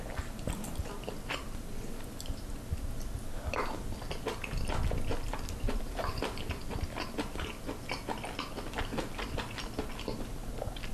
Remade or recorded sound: recorded